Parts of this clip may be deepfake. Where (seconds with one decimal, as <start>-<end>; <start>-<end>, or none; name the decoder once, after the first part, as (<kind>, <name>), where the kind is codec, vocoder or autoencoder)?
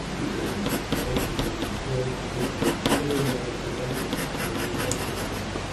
none